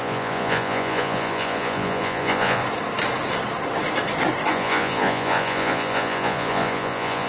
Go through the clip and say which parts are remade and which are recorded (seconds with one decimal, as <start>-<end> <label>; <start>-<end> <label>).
0.0-2.6 remade; 2.6-4.5 recorded; 4.5-7.3 remade